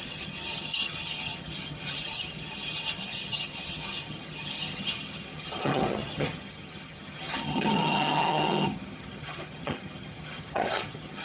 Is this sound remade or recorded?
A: remade